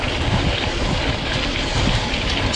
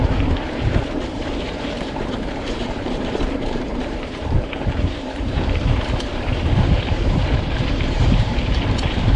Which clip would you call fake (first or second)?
second